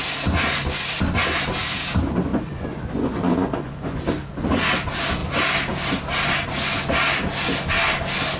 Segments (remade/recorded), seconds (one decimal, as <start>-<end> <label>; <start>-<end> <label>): 0.0-2.3 recorded; 2.3-4.0 remade; 4.0-8.4 recorded